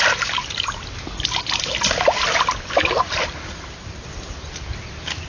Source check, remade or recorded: recorded